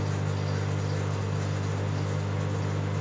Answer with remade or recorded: recorded